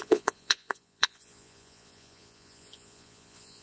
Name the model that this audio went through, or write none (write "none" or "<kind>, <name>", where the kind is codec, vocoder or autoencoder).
vocoder, Vocos